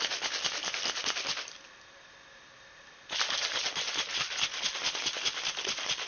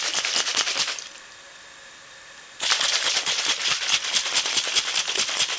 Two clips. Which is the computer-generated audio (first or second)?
second